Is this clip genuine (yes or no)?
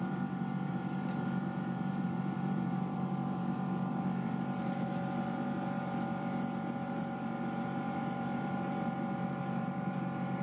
no